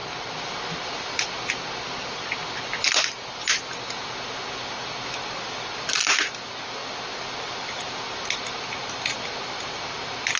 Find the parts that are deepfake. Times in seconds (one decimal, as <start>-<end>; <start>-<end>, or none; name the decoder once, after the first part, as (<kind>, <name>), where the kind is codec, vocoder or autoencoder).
none